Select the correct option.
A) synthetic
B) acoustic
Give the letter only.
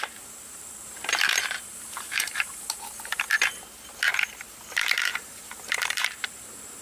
A